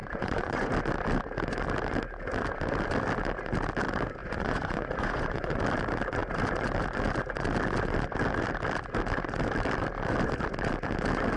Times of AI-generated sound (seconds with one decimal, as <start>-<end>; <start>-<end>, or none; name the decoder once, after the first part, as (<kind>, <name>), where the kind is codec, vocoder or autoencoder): 0.0-0.7 (vocoder, Vocos); 4.2-5.6